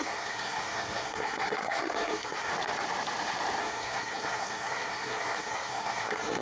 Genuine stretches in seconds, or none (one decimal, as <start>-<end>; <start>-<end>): 2.5-3.6